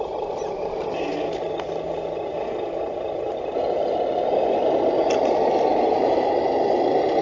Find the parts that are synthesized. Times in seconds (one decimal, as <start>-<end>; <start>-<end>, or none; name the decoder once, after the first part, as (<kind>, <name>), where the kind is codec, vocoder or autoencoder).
5.7-6.3 (vocoder, BigVGAN v2)